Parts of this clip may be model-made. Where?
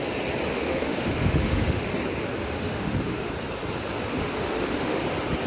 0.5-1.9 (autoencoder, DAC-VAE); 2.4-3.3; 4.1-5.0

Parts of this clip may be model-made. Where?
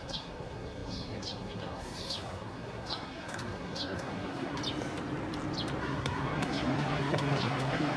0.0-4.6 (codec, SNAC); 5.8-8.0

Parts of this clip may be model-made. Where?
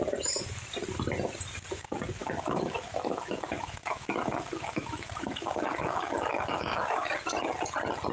2.2-7.1 (autoencoder, DAC-VAE)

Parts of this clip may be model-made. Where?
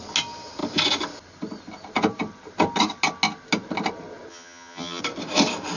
4.3-5.0 (vocoder, HiFi-GAN)